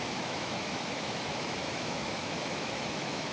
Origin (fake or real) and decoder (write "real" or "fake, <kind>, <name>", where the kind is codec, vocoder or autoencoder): fake, autoencoder, DAC-VAE